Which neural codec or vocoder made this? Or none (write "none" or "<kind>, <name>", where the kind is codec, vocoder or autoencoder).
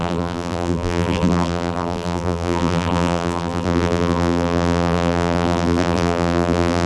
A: vocoder, BigVGAN v2